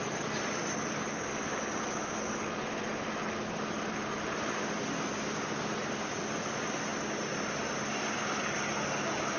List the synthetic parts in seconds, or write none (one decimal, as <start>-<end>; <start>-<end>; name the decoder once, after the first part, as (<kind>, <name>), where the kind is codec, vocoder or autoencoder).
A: none

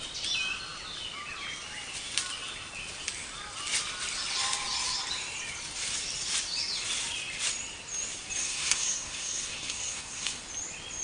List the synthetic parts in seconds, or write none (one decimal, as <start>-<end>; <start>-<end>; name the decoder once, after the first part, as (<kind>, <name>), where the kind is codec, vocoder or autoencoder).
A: 8.4-10.4 (codec, SNAC)

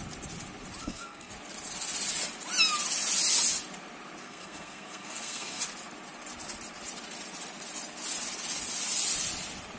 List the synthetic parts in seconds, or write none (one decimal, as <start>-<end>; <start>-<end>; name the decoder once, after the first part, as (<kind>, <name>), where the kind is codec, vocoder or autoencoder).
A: 0.8-1.3 (codec, SNAC); 4.2-5.6

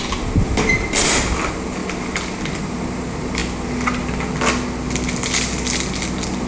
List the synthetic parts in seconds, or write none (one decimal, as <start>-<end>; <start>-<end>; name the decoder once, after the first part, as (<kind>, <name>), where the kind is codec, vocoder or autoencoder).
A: none

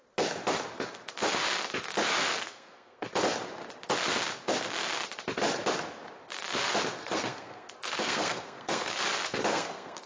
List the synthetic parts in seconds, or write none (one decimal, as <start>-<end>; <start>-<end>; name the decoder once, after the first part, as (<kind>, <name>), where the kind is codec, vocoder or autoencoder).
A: 2.4-3.1 (codec, SNAC); 7.0-9.0; 9.5-10.1

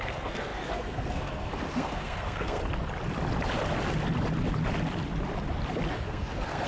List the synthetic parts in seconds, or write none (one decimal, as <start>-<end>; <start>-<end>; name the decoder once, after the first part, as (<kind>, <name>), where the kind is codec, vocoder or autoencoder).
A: 0.0-2.6 (codec, SNAC); 5.9-6.7

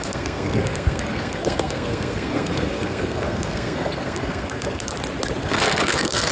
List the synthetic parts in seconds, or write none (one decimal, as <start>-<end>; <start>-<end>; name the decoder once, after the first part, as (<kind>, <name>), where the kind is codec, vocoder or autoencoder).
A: 0.0-4.9 (codec, SNAC); 5.4-6.3